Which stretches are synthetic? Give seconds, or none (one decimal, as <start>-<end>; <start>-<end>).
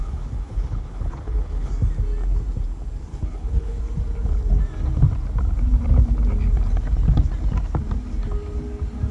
0.0-1.7; 3.1-3.8